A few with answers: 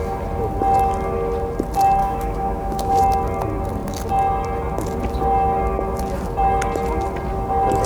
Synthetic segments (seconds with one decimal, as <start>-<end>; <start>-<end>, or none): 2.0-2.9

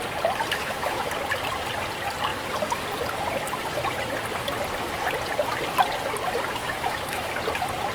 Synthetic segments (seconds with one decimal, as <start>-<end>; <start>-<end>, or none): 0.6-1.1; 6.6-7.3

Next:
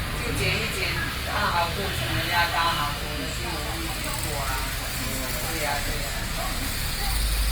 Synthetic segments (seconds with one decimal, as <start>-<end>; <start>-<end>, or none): none